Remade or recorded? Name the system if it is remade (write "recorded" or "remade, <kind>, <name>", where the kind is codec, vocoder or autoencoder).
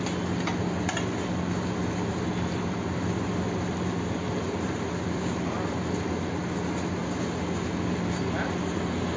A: recorded